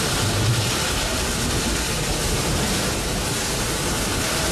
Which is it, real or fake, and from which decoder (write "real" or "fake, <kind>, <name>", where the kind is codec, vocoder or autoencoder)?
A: real